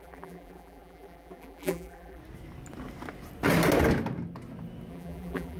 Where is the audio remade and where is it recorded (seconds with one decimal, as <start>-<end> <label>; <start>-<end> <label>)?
0.0-2.2 remade; 2.2-4.9 recorded; 4.9-5.6 remade